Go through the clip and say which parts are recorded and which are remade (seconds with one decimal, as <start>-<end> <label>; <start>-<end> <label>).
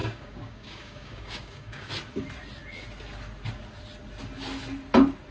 0.0-1.9 remade; 1.9-5.3 recorded